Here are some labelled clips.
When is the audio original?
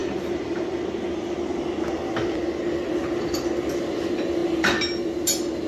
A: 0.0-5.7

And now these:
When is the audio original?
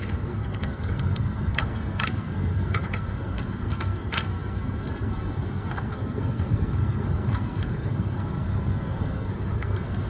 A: none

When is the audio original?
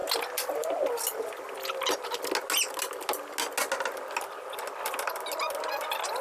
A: 0.0-6.2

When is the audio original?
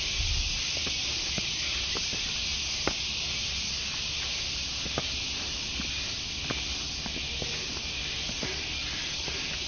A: 0.0-9.7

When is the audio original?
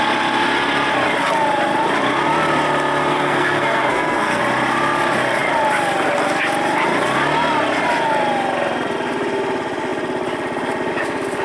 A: 0.0-3.1; 4.4-11.4